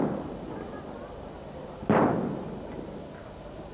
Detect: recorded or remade recorded